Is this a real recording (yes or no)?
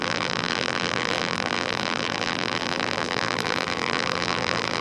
no